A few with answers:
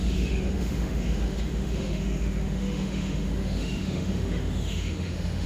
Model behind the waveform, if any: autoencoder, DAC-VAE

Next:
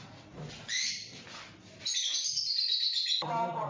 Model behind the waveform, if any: vocoder, BigVGAN v2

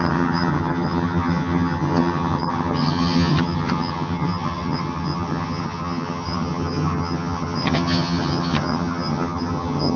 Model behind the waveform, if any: vocoder, HiFi-GAN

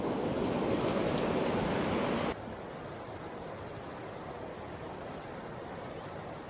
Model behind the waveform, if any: none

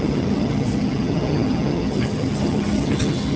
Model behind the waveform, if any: vocoder, HiFi-GAN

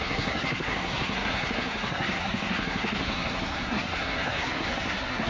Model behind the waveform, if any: codec, SNAC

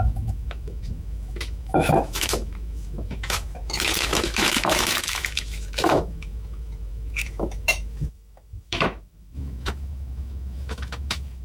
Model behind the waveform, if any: autoencoder, DAC-VAE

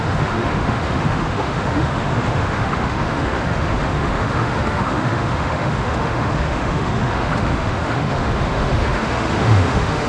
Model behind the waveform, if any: autoencoder, DAC-VAE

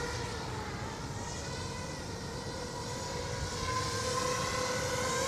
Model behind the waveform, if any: none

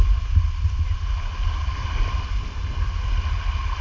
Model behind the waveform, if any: none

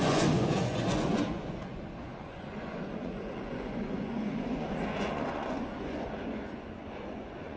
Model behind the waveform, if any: vocoder, Vocos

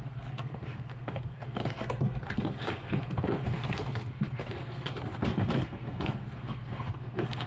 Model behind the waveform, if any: codec, SNAC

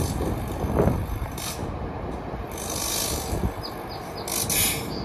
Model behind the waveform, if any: none